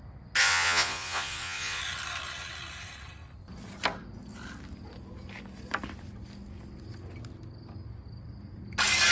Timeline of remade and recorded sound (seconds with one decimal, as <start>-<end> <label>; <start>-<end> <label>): 0.0-0.4 recorded; 0.4-1.8 remade; 1.8-9.1 recorded